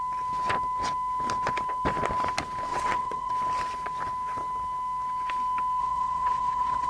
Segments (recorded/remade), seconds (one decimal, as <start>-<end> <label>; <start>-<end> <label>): 0.0-2.7 recorded; 2.7-3.3 remade; 3.3-5.8 recorded; 5.8-6.9 remade